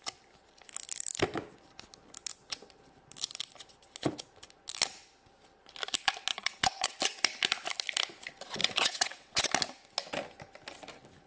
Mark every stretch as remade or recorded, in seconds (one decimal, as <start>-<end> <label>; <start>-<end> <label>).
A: 0.0-6.3 recorded; 6.3-7.0 remade; 7.0-8.6 recorded; 8.6-9.5 remade; 9.5-11.3 recorded